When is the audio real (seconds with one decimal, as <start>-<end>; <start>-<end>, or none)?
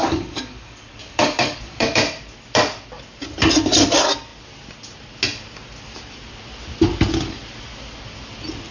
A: 2.0-8.7